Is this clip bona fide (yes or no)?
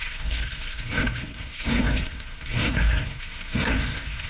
no